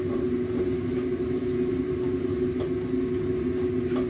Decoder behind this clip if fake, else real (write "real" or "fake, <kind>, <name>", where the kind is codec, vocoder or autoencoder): real